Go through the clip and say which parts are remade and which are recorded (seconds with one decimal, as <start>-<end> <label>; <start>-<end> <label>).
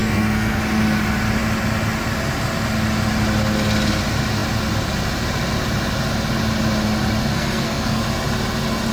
0.0-0.6 remade; 0.6-7.3 recorded; 7.3-8.0 remade; 8.0-8.9 recorded